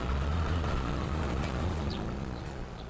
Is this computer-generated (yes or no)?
yes